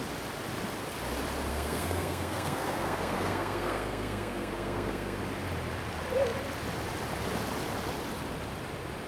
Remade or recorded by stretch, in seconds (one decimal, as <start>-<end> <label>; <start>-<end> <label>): 0.0-1.5 recorded; 1.5-5.2 remade; 5.2-9.1 recorded